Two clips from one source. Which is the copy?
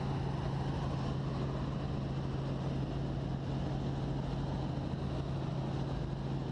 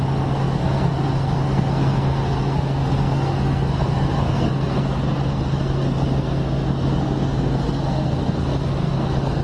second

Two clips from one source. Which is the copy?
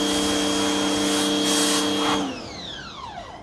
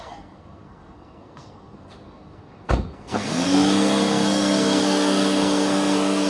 second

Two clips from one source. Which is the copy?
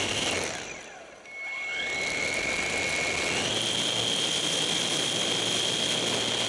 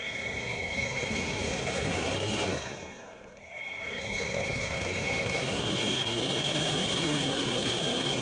second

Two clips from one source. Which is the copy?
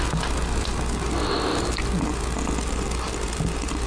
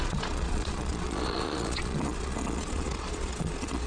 second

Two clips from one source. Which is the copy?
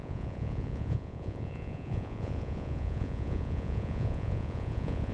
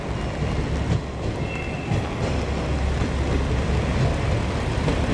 first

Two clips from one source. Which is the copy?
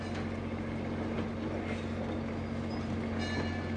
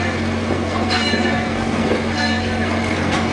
second